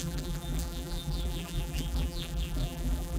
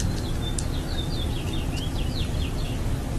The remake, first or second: first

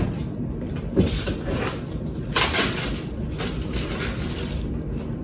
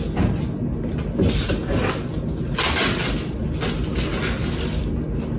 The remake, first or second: first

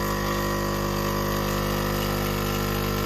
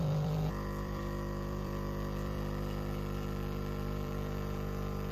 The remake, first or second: second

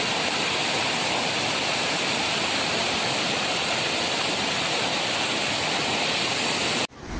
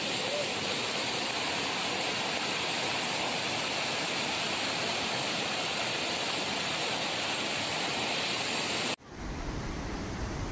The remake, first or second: first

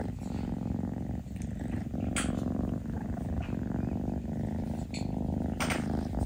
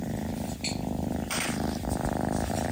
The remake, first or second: second